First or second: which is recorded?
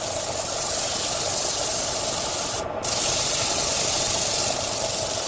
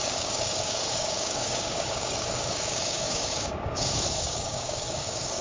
first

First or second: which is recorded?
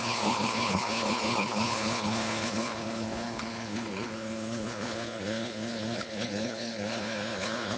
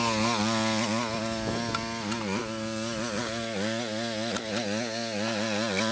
second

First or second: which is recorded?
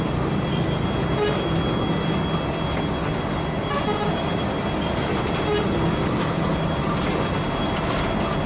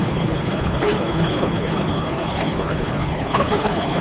first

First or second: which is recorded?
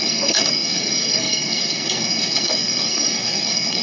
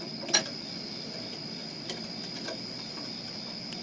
second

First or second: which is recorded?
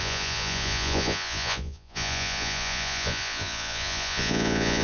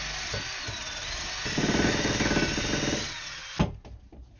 second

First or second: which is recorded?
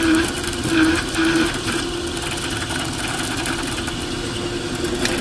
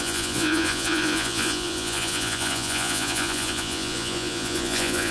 first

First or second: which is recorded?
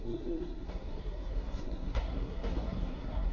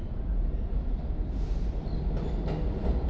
second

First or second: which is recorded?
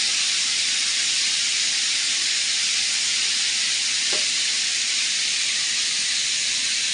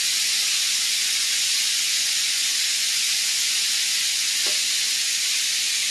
first